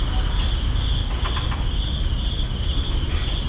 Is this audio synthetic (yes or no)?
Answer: no